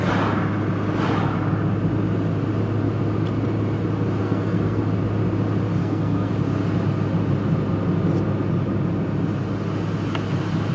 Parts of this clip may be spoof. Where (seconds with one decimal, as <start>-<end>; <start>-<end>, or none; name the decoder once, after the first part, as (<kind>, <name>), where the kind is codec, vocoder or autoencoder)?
4.2-4.8 (codec, SNAC); 5.8-6.3